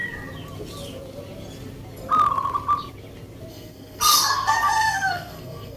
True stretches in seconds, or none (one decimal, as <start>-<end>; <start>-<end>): 0.0-3.5